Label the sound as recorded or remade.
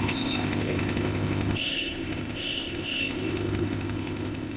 remade